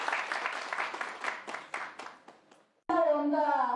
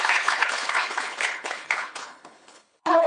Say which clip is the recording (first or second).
first